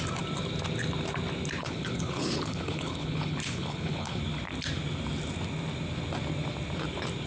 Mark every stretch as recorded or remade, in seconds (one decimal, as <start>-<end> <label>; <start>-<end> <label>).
0.0-1.6 recorded; 1.6-4.2 remade; 4.2-7.3 recorded